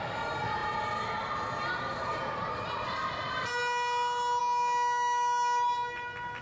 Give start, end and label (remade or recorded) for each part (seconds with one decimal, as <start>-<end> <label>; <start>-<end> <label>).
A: 0.0-6.4 recorded